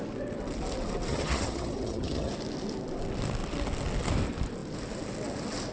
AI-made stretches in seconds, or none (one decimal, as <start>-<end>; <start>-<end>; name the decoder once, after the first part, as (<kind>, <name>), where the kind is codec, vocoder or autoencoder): 1.1-2.3 (vocoder, HiFi-GAN)